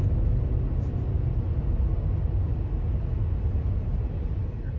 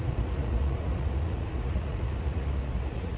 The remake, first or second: second